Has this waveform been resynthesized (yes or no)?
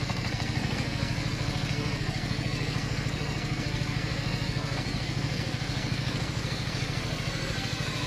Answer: yes